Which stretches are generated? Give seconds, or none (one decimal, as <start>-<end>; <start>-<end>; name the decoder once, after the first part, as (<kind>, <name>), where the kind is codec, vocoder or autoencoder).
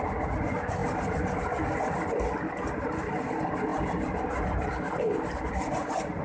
3.7-5.5 (vocoder, BigVGAN v2)